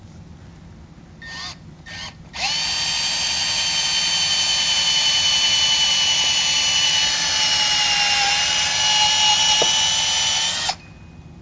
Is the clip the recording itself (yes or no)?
yes